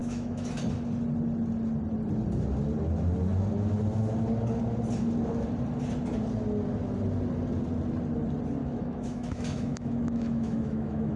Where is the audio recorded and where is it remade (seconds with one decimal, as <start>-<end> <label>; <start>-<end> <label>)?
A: 0.0-0.6 remade; 0.6-8.6 recorded; 8.6-11.2 remade